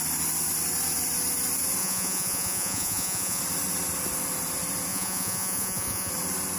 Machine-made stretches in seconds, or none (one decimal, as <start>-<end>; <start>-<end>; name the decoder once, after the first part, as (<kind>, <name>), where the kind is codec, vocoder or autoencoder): 1.8-3.4 (vocoder, Vocos); 4.9-6.1